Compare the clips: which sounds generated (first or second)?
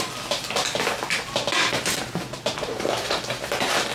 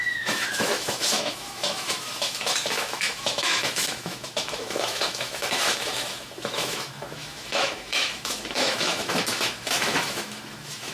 second